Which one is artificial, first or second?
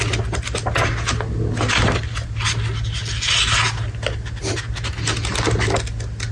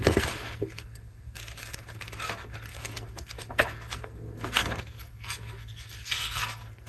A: second